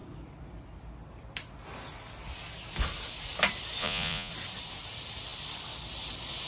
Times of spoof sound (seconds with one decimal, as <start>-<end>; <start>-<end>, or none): 3.8-4.3